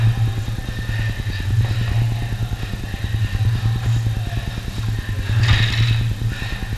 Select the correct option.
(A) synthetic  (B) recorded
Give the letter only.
B